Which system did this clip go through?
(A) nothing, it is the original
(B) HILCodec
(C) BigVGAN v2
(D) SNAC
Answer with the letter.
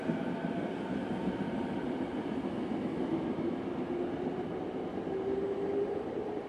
A